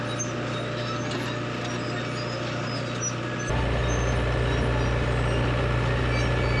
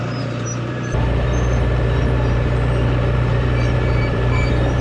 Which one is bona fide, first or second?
first